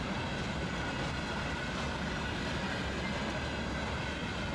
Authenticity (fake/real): real